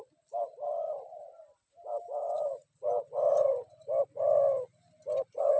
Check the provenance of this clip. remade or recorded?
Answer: recorded